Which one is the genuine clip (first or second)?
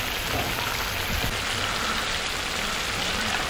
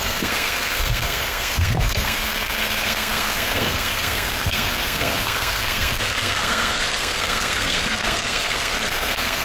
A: first